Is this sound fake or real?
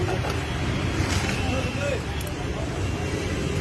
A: real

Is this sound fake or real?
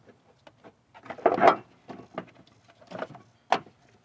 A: real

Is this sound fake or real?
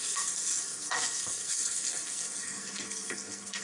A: fake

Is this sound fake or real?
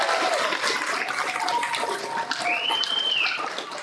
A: real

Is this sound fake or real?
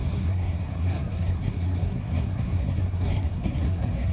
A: fake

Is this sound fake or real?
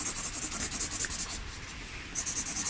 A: real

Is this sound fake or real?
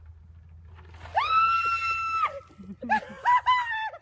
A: real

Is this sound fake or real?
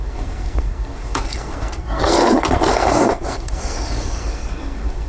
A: fake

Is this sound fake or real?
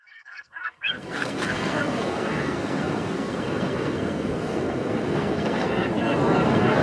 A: fake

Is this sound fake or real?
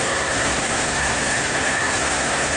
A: fake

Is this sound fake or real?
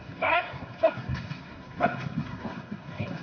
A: fake